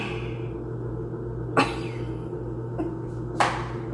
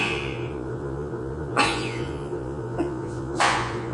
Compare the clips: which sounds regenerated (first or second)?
second